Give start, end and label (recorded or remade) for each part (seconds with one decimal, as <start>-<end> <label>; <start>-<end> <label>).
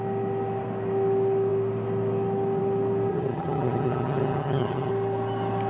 0.0-3.1 recorded; 3.1-4.9 remade; 4.9-5.7 recorded